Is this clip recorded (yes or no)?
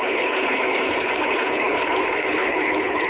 no